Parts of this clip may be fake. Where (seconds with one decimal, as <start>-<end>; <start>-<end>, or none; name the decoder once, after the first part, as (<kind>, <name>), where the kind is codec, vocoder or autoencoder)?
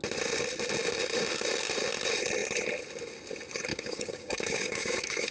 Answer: 3.7-5.3 (codec, DAC)